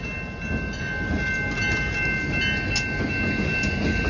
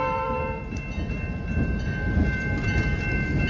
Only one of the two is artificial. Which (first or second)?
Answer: second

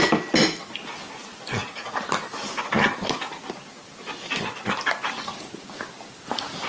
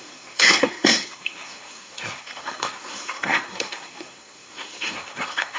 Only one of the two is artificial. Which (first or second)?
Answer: second